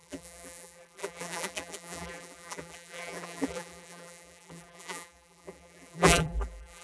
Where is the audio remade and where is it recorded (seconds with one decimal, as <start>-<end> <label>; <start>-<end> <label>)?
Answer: 0.0-6.8 remade